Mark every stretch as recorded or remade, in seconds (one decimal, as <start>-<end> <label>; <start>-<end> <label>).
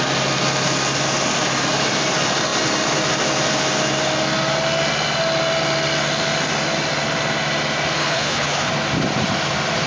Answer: 0.0-8.0 recorded; 8.0-8.7 remade; 8.7-9.9 recorded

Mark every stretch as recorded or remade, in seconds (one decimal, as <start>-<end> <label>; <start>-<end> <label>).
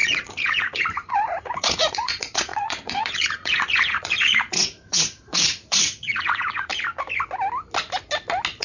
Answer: 0.0-6.7 remade; 6.7-8.6 recorded